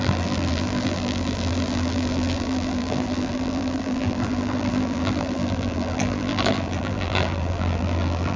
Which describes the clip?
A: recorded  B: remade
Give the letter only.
B